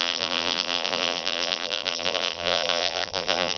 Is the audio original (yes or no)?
no